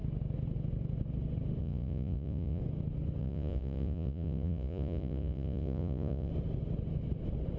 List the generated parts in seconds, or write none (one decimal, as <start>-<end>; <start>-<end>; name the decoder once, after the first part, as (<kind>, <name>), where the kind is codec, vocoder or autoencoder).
1.6-2.6 (vocoder, Vocos); 3.2-6.3